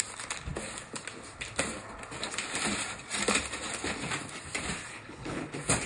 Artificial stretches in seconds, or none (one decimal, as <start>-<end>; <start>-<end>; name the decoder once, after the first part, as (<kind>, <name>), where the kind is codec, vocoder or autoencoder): 4.9-5.4 (codec, HILCodec)